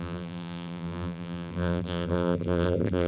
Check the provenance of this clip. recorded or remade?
remade